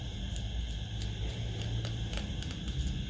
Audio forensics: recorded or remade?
recorded